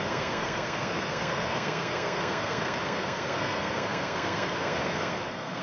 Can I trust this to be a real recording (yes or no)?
no